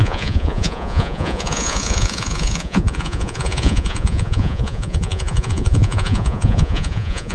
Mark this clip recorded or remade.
remade